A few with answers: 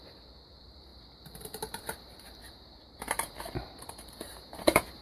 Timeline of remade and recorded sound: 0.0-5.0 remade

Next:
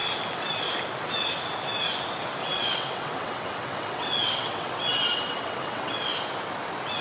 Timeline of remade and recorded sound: 0.0-2.4 recorded; 2.4-6.1 remade; 6.1-7.0 recorded

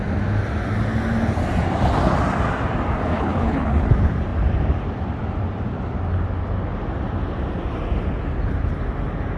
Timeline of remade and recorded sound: 0.0-3.1 recorded; 3.1-3.9 remade; 3.9-9.4 recorded

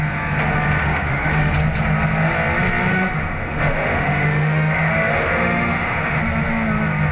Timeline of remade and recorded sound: 0.0-0.8 recorded; 0.8-1.5 remade; 1.5-2.9 recorded; 2.9-6.2 remade; 6.2-7.1 recorded

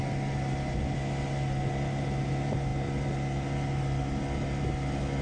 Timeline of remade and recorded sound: 0.0-5.2 recorded

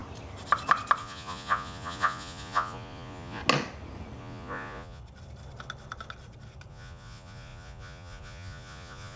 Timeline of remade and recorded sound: 0.0-1.0 recorded; 1.0-3.4 remade; 3.4-4.2 recorded; 4.2-5.0 remade; 5.0-6.7 recorded; 6.7-9.2 remade